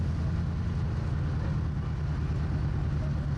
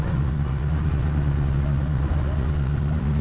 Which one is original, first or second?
first